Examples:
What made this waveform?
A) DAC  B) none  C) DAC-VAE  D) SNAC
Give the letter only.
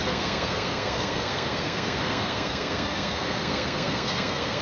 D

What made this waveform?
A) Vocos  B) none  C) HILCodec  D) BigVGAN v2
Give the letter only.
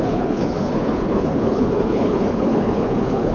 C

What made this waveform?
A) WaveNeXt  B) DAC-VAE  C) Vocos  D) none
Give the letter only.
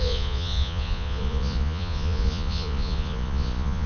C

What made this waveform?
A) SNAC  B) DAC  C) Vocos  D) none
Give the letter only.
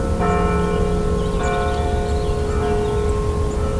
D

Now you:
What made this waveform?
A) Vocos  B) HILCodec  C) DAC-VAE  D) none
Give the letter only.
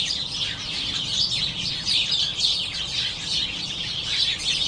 D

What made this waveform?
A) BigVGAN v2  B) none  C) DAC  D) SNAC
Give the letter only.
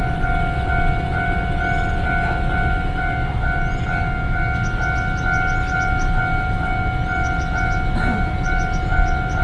B